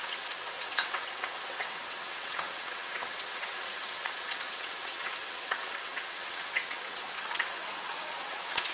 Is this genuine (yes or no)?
no